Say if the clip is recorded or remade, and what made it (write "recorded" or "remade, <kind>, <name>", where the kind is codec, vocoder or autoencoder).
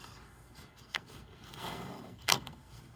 remade, codec, SNAC